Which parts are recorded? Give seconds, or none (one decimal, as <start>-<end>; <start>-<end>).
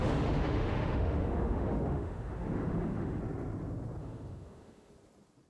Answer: 3.2-4.0; 4.9-5.5